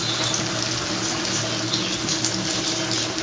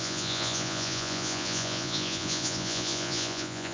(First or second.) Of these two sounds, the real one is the first